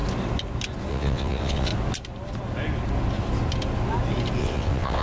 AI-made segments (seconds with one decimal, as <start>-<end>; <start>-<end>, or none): 0.9-1.7; 4.4-5.0